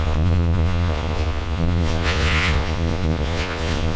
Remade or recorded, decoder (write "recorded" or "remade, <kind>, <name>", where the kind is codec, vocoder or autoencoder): remade, vocoder, Vocos